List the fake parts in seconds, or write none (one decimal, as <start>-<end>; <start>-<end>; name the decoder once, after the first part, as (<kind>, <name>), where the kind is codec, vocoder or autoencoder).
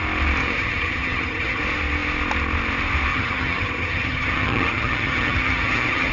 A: 0.4-1.6 (vocoder, HiFi-GAN); 3.1-6.1